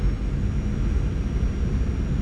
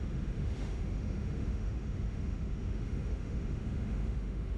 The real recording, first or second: first